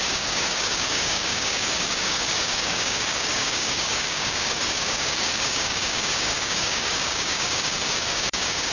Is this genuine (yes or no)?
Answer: no